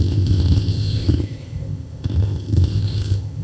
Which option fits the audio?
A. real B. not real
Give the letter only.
B